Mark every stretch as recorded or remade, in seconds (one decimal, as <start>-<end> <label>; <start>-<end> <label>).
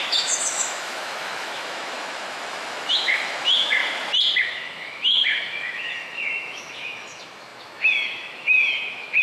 0.0-3.8 remade; 3.8-4.4 recorded; 4.4-9.2 remade